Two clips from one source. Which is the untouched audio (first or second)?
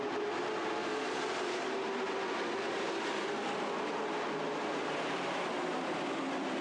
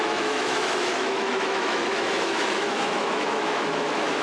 first